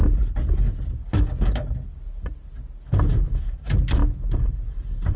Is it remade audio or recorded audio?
recorded